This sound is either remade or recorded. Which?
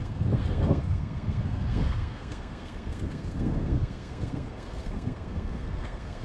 remade